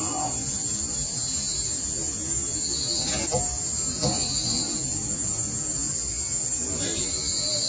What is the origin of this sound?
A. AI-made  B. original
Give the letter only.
B